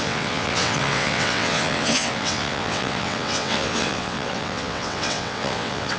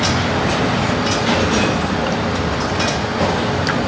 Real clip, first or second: second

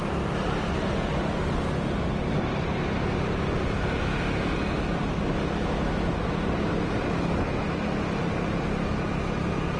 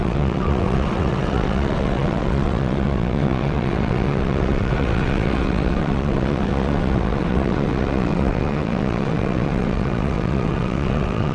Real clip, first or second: first